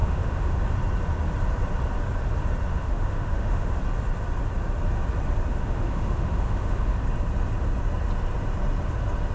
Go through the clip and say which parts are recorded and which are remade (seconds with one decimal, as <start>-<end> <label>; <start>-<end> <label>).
0.0-0.6 remade; 0.6-2.7 recorded; 2.7-3.7 remade; 3.7-5.5 recorded; 5.5-6.9 remade; 6.9-9.3 recorded

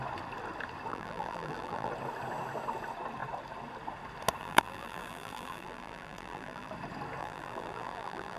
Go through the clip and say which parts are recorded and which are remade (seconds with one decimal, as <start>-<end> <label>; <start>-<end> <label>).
0.0-0.9 recorded; 0.9-1.9 remade; 1.9-4.4 recorded; 4.4-6.7 remade; 6.7-7.2 recorded; 7.2-8.4 remade

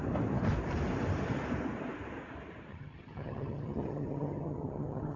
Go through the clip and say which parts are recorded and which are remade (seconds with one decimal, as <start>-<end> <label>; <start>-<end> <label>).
0.0-2.7 recorded; 2.7-5.2 remade

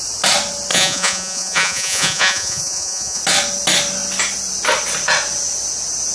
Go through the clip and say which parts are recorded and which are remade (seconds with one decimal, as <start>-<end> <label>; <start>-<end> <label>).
0.0-0.7 recorded; 0.7-3.2 remade; 3.2-6.1 recorded

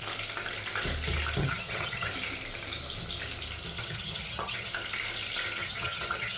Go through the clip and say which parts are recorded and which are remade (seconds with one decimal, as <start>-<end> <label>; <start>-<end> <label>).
0.0-1.4 recorded; 1.4-2.1 remade; 2.1-3.8 recorded; 3.8-4.7 remade; 4.7-5.6 recorded; 5.6-6.4 remade

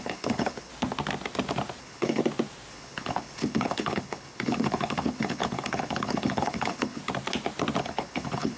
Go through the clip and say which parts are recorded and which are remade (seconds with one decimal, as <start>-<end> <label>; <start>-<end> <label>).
0.0-0.7 remade; 0.7-1.8 recorded; 1.8-2.2 remade; 2.2-2.7 recorded; 2.7-7.0 remade; 7.0-7.8 recorded; 7.8-8.6 remade

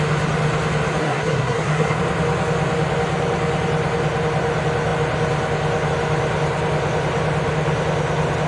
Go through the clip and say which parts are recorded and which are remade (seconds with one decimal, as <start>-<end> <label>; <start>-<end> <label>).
0.0-1.0 recorded; 1.0-2.0 remade; 2.0-8.5 recorded